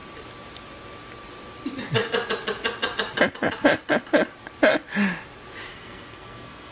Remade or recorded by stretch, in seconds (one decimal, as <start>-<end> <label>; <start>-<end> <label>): 0.0-5.7 recorded; 5.7-6.7 remade